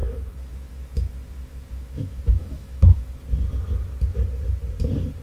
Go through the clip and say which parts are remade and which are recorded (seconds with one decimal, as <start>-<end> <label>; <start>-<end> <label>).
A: 0.0-3.1 remade; 3.1-5.2 recorded